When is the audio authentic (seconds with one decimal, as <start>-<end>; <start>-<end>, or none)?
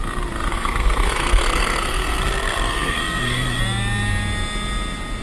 0.0-0.5; 3.6-5.2